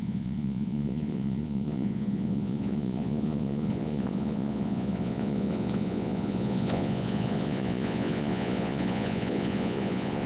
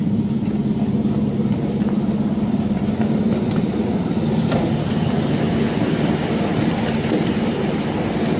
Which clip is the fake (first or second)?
first